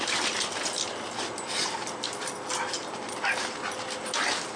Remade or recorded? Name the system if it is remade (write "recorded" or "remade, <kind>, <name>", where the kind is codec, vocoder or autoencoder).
recorded